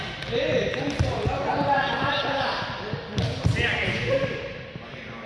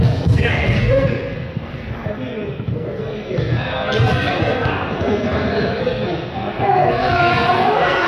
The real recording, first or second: first